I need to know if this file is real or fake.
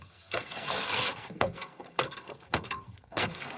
fake